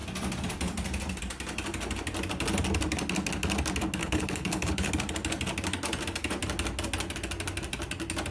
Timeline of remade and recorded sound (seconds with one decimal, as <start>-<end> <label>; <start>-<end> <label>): 0.0-4.0 recorded; 4.0-4.9 remade; 4.9-8.3 recorded